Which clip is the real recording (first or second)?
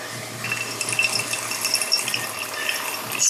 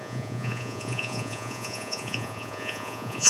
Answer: first